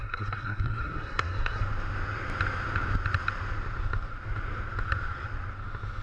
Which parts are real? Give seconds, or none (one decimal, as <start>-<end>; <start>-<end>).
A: 1.6-6.0